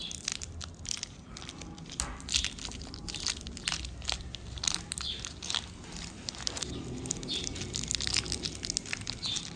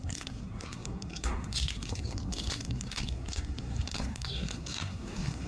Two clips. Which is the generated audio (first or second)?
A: second